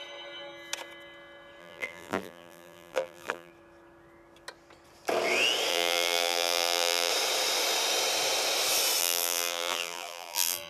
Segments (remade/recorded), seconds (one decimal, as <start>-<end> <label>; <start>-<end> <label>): 0.0-1.6 recorded; 1.6-3.5 remade; 3.5-5.7 recorded; 5.7-7.1 remade; 7.1-9.0 recorded; 9.0-10.7 remade